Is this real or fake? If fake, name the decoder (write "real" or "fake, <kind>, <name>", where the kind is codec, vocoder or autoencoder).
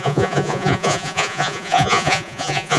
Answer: fake, vocoder, Vocos